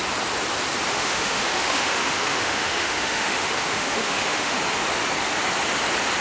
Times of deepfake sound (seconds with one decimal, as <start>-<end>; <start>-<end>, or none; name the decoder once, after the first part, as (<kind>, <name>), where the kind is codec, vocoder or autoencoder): 0.9-4.6 (autoencoder, DAC-VAE)

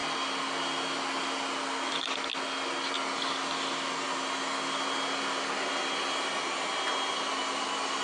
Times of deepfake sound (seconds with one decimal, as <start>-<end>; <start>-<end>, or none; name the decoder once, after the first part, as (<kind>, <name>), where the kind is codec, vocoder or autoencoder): none

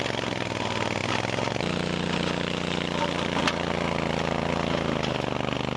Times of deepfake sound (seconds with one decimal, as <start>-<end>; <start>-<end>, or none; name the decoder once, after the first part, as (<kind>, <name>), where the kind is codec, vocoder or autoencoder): none

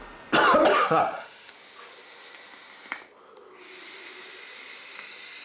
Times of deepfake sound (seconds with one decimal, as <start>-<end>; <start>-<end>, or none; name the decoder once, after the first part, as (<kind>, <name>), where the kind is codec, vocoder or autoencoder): 0.7-1.5 (autoencoder, DAC-VAE)

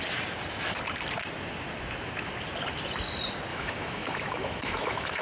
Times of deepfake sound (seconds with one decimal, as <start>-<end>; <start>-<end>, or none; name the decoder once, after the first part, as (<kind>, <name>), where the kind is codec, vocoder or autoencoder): 3.5-5.2 (autoencoder, DAC-VAE)

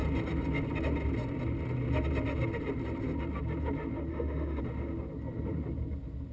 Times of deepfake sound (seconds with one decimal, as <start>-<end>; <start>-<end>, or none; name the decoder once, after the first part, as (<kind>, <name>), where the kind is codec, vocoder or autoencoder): 4.1-4.6 (autoencoder, DAC-VAE)

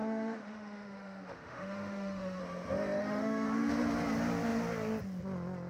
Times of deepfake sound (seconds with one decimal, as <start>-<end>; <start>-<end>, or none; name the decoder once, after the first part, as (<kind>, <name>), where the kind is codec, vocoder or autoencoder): 0.0-2.4 (autoencoder, DAC-VAE); 3.0-3.7

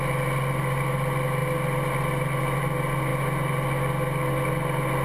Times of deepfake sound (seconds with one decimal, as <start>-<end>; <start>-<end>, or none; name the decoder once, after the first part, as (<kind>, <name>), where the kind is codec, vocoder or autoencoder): none